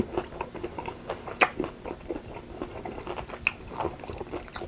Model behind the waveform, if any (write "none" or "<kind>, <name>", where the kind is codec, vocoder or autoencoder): none